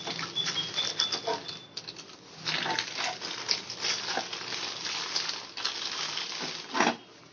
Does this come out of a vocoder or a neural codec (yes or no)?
no